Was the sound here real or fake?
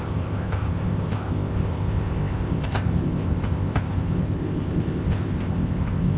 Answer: fake